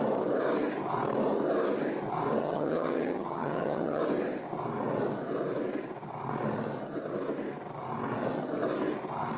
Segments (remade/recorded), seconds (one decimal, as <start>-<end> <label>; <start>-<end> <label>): 0.0-2.4 recorded; 2.4-4.0 remade; 4.0-9.4 recorded